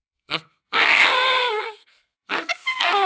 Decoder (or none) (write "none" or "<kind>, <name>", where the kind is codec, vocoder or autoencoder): codec, SNAC